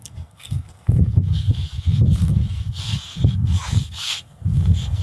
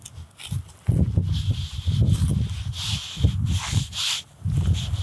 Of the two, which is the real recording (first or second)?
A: second